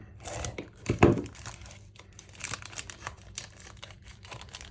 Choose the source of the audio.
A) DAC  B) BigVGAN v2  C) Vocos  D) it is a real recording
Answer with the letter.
B